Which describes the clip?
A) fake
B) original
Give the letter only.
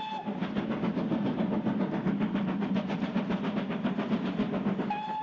B